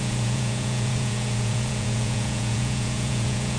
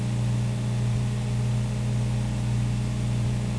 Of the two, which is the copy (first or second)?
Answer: first